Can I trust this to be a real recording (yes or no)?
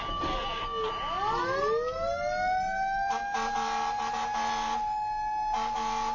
yes